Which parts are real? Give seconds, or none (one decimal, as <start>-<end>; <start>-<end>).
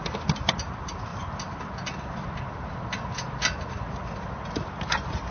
0.0-5.3